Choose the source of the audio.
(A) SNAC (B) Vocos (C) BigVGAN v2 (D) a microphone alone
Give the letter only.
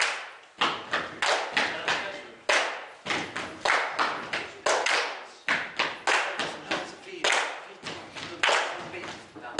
D